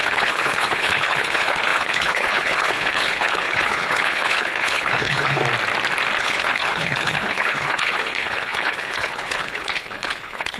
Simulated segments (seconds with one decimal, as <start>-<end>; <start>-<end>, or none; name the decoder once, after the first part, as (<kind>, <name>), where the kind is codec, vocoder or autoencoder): 0.0-5.4 (codec, HILCodec); 6.2-10.6